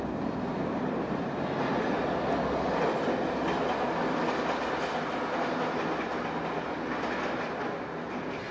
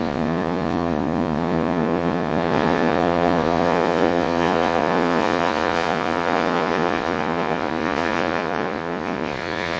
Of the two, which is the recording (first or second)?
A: first